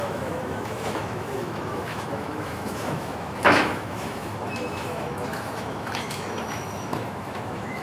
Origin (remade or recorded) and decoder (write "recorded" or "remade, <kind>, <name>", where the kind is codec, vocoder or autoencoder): remade, autoencoder, DAC-VAE